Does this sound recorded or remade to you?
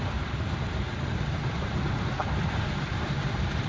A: remade